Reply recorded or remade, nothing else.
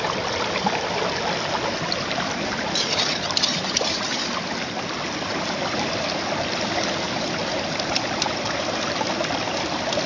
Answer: recorded